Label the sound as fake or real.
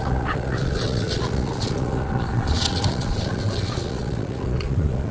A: fake